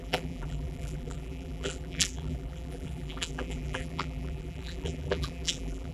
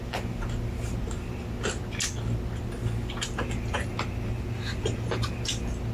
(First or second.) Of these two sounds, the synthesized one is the first